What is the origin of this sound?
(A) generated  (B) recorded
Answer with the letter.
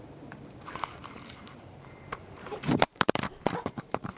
A